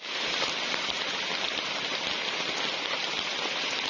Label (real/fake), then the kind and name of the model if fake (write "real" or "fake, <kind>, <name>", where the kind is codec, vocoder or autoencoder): real